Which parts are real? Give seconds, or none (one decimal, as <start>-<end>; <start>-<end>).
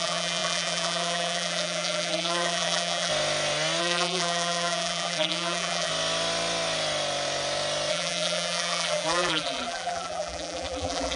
3.1-3.8; 5.9-7.9